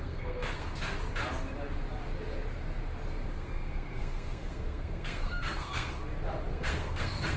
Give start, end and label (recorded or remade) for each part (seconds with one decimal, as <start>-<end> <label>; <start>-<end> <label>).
0.0-0.7 remade; 0.7-3.3 recorded; 3.3-6.0 remade; 6.0-6.5 recorded; 6.5-7.4 remade